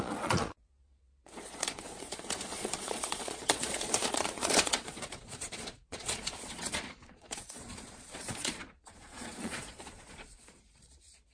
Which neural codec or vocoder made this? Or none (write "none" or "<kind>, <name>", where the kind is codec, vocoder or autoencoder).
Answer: vocoder, Vocos